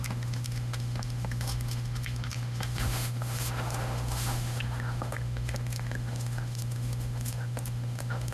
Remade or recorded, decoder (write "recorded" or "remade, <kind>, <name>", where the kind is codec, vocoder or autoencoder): remade, autoencoder, DAC-VAE